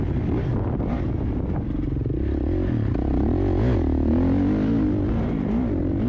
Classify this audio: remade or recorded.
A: recorded